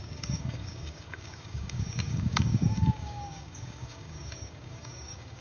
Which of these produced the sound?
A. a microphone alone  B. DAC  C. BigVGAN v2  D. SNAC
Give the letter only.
B